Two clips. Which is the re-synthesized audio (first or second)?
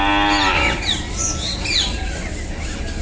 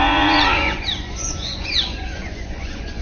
second